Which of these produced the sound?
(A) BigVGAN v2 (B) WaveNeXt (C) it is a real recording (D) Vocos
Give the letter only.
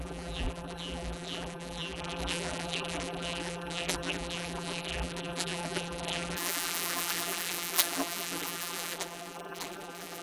A